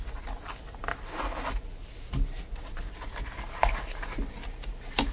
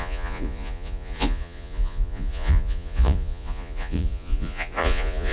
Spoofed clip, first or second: second